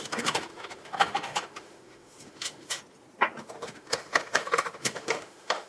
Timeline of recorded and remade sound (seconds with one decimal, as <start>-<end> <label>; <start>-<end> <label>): 0.0-2.8 remade; 2.8-3.4 recorded; 3.4-5.7 remade